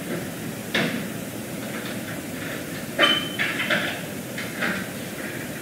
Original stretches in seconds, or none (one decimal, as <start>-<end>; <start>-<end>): 1.6-5.0